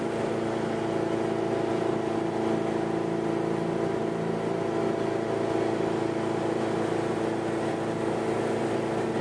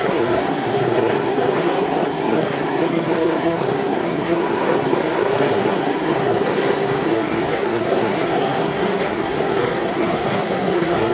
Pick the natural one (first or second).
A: first